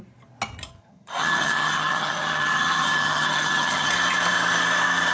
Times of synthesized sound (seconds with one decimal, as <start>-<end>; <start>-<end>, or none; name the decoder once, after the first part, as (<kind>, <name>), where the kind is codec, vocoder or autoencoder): 0.8-3.9 (vocoder, HiFi-GAN)